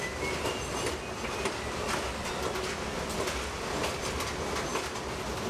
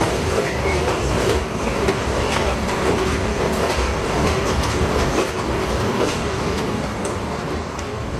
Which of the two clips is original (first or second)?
first